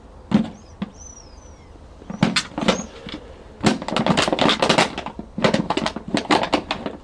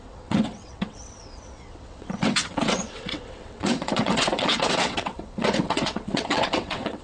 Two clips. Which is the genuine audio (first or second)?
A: first